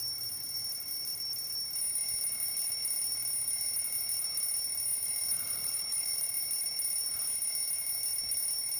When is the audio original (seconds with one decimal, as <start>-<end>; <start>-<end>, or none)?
0.0-4.9; 6.3-8.8